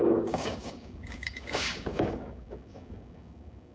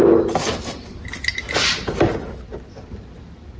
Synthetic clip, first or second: first